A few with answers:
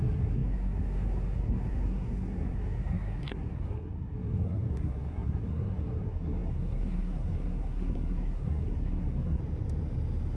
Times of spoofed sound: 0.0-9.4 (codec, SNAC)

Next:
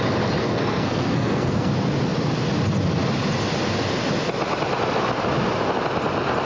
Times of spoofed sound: 0.4-1.7 (codec, SNAC)

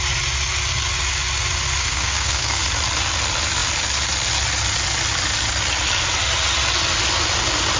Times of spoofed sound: 1.8-2.6 (codec, SNAC)

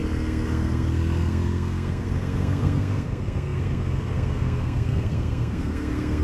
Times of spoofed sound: 0.0-6.2 (codec, SNAC)